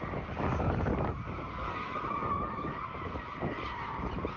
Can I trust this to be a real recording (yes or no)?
yes